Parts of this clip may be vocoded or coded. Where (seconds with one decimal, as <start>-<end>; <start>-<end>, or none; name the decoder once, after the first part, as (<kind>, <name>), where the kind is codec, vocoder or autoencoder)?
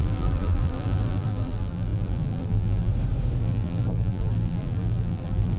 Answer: 0.0-2.9 (vocoder, BigVGAN v2); 3.4-5.6